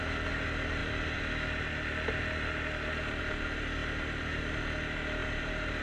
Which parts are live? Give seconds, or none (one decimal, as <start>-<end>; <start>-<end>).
0.0-5.2